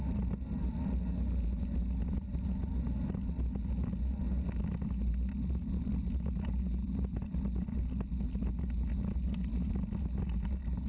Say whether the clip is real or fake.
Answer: real